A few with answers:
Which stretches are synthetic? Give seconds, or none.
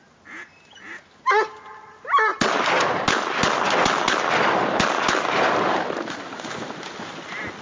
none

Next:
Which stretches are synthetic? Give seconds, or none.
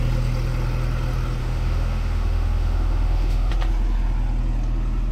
1.4-3.5 (autoencoder, DAC-VAE)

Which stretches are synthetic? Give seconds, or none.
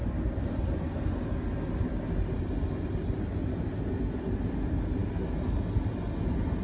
none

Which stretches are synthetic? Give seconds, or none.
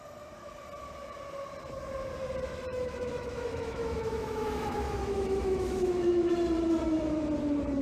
2.7-6.3 (autoencoder, DAC-VAE)